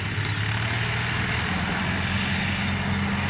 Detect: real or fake real